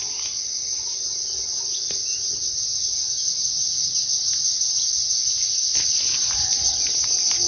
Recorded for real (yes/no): yes